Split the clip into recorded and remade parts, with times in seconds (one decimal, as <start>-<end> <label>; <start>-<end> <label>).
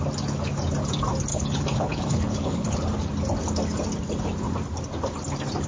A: 0.0-1.3 recorded; 1.3-2.8 remade; 2.8-5.7 recorded